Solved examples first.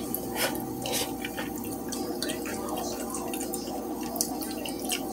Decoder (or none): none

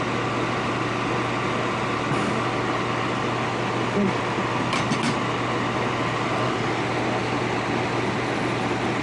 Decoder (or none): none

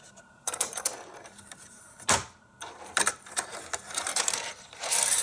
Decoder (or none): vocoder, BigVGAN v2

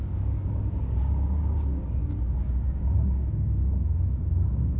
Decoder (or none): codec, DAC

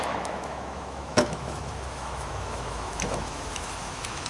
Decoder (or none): autoencoder, DAC-VAE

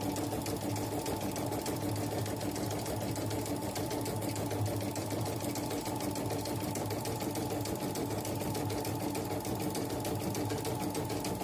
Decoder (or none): none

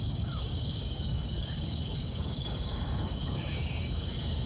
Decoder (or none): codec, DAC